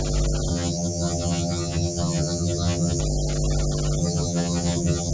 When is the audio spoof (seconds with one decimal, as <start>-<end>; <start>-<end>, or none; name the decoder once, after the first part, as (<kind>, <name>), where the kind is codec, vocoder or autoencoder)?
0.5-3.0 (vocoder, HiFi-GAN); 4.0-5.1